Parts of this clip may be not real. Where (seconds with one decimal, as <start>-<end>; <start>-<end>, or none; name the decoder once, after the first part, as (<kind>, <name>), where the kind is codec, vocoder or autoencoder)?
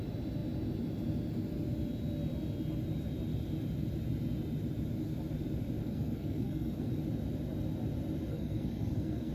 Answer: 5.8-6.9 (codec, SNAC); 8.3-9.3